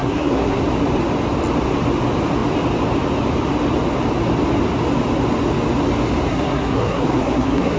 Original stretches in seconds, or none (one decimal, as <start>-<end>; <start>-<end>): 0.6-6.3